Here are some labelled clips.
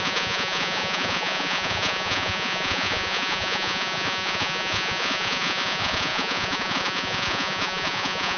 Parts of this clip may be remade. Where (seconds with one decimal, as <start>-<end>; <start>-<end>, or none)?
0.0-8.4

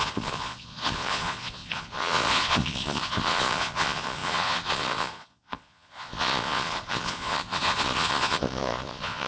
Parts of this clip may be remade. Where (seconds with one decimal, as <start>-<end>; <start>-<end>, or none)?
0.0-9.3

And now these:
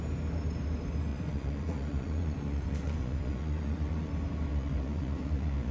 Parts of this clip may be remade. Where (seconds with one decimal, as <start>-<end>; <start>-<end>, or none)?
1.1-4.1; 4.5-5.7